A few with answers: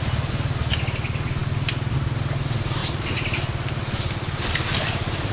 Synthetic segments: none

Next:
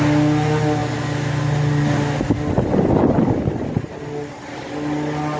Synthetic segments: none

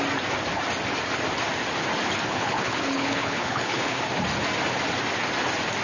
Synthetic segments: 2.3-4.0 (codec, HILCodec)

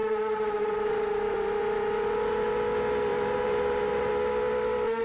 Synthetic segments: 0.0-1.6 (vocoder, BigVGAN v2); 3.1-4.1

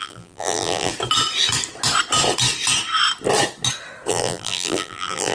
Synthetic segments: 0.0-0.9 (vocoder, BigVGAN v2); 4.1-5.3

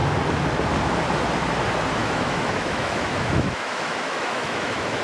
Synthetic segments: 2.0-5.0 (autoencoder, DAC-VAE)

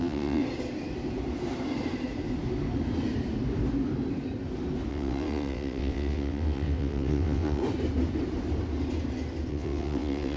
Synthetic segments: 0.0-0.4 (vocoder, WaveNeXt); 4.9-7.6; 9.5-10.4